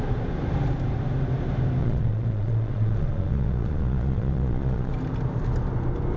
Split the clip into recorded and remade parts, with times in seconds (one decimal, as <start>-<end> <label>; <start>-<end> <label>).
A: 0.0-1.8 recorded; 1.8-4.9 remade; 4.9-6.2 recorded